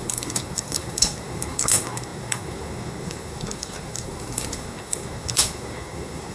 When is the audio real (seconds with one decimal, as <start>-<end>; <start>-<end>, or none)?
none